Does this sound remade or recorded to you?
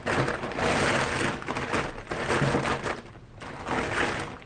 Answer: recorded